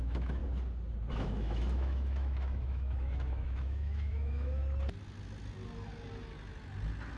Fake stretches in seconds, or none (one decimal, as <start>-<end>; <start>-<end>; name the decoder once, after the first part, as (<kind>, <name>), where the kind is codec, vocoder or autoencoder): 0.0-0.4 (autoencoder, DAC-VAE); 1.1-4.6